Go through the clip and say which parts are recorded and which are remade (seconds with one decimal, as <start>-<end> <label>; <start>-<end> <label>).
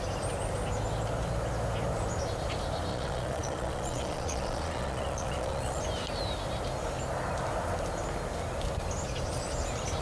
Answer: 0.0-2.9 recorded; 2.9-5.8 remade; 5.8-10.0 recorded